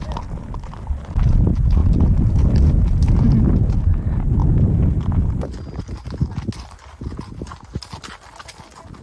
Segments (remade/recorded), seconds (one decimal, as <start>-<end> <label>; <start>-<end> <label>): 0.0-9.0 recorded